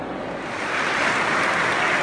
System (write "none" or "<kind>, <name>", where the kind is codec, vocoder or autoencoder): none